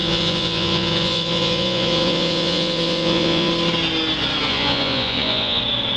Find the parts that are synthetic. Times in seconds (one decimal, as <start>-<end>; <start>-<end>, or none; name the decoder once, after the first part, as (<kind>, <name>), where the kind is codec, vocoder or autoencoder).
0.0-3.5 (vocoder, Vocos); 4.5-5.6